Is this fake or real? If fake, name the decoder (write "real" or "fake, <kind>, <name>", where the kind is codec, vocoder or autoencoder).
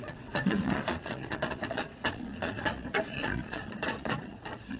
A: fake, vocoder, Vocos